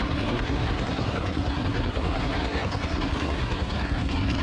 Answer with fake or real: fake